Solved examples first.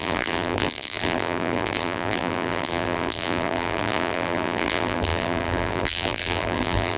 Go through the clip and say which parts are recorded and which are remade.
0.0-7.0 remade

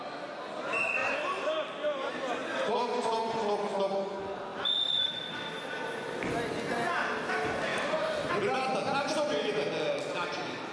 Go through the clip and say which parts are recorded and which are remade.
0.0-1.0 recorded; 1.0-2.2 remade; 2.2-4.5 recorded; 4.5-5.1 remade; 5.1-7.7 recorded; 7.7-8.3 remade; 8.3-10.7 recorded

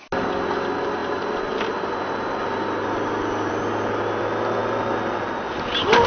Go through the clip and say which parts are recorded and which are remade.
0.0-1.0 recorded; 1.0-3.5 remade; 3.5-6.1 recorded

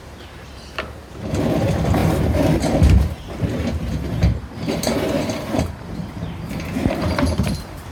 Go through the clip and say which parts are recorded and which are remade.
0.0-7.9 remade

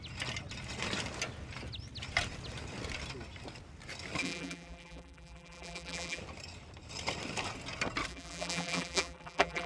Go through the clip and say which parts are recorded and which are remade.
0.0-4.2 recorded; 4.2-6.2 remade; 6.2-8.1 recorded; 8.1-9.7 remade